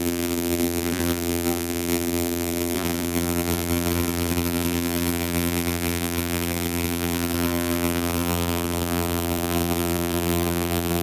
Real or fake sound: fake